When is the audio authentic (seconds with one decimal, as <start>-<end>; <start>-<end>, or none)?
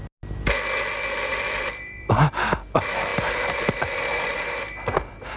0.0-1.3; 2.1-3.1; 4.6-5.4